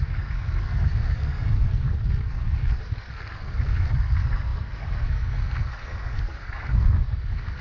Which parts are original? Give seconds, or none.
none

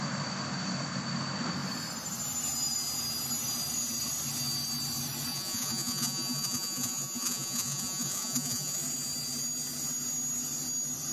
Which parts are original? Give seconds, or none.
0.0-5.3; 8.8-11.1

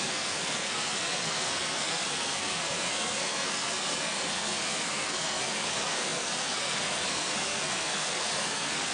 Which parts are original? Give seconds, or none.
none

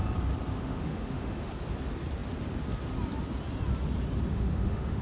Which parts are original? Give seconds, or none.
0.0-0.5; 1.5-4.3

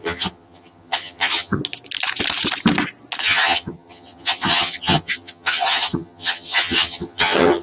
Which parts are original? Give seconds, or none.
1.6-3.2

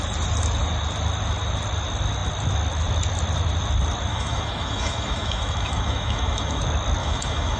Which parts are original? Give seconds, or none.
0.0-4.1; 6.6-7.0

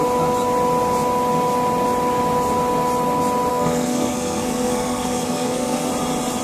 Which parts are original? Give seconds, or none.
0.0-3.5; 5.9-6.4

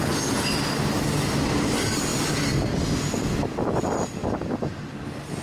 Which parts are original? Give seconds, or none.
0.0-2.1; 3.5-4.2; 5.0-5.4